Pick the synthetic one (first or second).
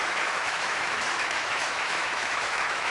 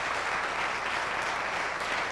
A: first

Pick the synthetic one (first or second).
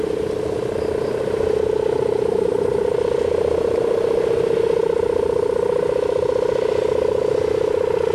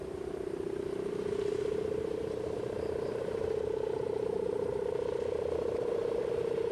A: second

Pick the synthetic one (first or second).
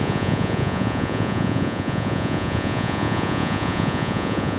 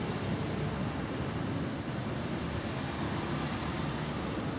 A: first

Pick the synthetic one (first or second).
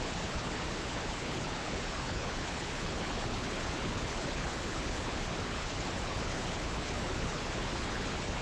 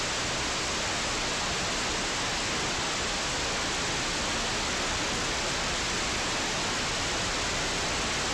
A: first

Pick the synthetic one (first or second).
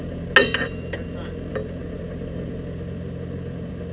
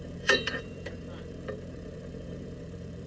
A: second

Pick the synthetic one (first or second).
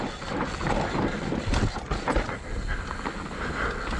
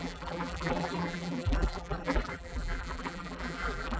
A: second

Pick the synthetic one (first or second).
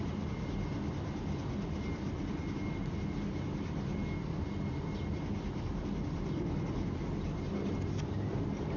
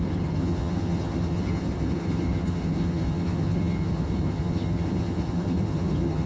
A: second